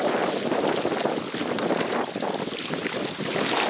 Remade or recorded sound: recorded